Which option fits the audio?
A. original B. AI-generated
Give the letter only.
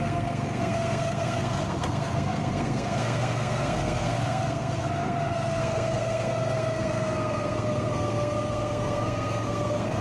B